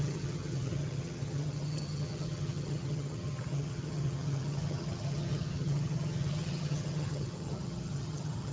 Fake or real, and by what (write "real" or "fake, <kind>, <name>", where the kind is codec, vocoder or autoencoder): fake, vocoder, HiFi-GAN